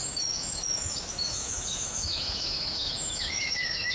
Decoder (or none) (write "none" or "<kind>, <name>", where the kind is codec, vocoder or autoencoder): autoencoder, DAC-VAE